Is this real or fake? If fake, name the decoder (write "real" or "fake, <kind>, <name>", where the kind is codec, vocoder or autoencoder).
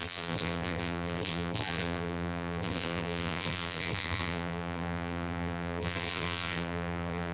fake, vocoder, BigVGAN v2